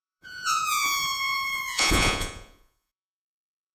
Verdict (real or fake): fake